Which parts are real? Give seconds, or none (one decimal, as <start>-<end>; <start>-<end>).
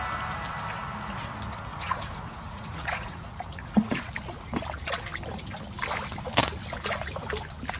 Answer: 0.0-1.7; 4.1-7.8